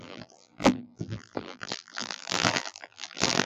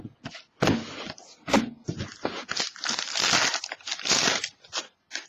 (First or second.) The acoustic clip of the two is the second